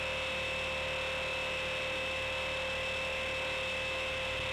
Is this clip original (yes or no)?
yes